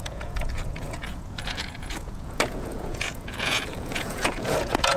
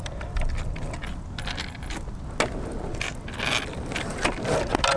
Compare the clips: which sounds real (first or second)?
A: second